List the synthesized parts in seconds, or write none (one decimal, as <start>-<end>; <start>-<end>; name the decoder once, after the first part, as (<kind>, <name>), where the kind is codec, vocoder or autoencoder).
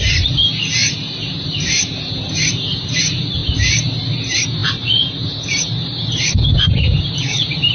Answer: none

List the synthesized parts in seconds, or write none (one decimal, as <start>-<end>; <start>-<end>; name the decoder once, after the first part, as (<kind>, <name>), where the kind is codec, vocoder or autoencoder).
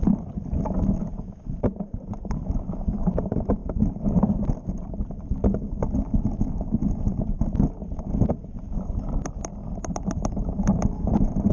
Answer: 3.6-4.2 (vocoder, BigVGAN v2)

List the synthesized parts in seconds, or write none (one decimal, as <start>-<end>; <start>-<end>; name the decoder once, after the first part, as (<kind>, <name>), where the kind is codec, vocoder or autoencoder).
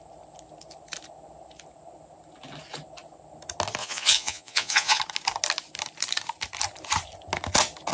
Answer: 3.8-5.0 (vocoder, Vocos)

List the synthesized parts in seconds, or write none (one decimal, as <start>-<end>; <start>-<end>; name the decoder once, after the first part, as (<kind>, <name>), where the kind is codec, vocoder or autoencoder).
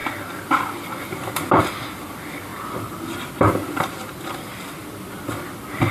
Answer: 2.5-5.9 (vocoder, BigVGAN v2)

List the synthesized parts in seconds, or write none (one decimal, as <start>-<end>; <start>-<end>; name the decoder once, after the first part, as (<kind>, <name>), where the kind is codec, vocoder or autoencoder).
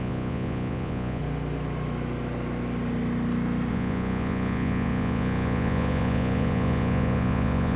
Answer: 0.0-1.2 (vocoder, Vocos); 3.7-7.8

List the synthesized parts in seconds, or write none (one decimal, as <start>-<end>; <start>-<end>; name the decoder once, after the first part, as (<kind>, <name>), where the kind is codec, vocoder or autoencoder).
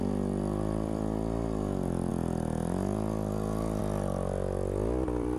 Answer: 0.0-2.1 (vocoder, BigVGAN v2); 3.8-5.4